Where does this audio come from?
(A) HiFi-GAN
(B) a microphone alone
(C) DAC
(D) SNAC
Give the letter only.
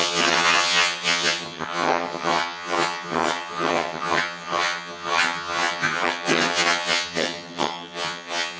A